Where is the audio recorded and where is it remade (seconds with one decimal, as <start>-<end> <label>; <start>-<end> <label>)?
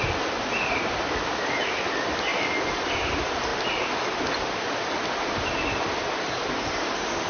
0.0-7.3 recorded